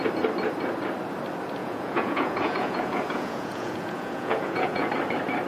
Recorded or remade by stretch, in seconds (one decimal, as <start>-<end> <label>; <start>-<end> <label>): 0.0-1.6 recorded; 1.6-4.9 remade; 4.9-5.5 recorded